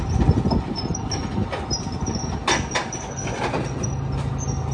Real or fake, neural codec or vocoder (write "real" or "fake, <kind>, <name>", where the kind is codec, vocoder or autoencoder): real